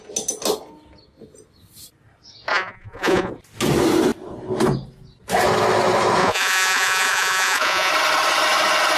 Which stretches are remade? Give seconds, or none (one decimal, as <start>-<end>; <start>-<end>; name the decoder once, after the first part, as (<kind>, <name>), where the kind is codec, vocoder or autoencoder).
2.5-3.3 (vocoder, Vocos); 6.2-7.9